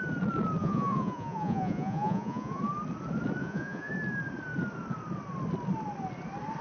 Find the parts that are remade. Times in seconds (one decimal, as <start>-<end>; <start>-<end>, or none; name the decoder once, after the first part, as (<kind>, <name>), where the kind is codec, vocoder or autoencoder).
0.6-2.6 (vocoder, Vocos); 3.4-3.9